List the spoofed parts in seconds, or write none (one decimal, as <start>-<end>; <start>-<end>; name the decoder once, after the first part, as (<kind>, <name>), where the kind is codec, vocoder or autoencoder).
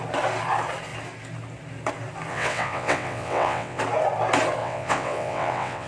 2.3-3.8 (vocoder, WaveNeXt); 4.6-5.9